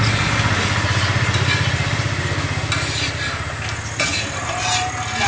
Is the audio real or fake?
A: real